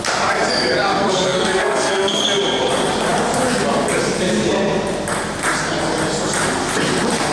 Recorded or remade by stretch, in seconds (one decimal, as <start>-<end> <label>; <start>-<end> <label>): 0.0-0.9 recorded; 0.9-2.2 remade; 2.2-7.3 recorded